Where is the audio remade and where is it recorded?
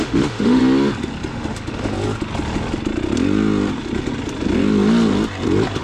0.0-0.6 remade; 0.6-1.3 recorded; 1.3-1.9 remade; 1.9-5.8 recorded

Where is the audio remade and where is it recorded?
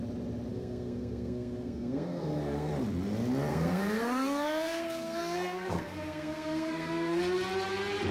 0.0-0.5 recorded; 0.5-2.7 remade; 2.7-3.5 recorded; 3.5-7.2 remade; 7.2-8.1 recorded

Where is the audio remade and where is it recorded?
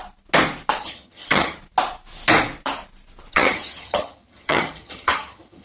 0.0-0.8 recorded; 0.8-1.6 remade; 1.6-3.3 recorded; 3.3-5.6 remade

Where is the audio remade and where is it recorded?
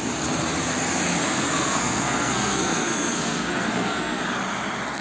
0.0-1.2 recorded; 1.2-4.2 remade; 4.2-5.0 recorded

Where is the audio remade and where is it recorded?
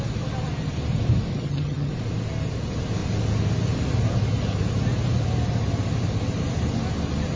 0.0-1.3 recorded; 1.3-1.9 remade; 1.9-7.4 recorded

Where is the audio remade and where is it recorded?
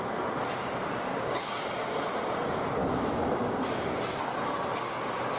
0.0-1.1 recorded; 1.1-1.6 remade; 1.6-2.8 recorded; 2.8-4.0 remade; 4.0-5.4 recorded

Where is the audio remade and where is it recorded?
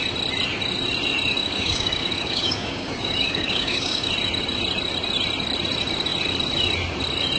0.0-1.4 recorded; 1.4-4.1 remade; 4.1-7.4 recorded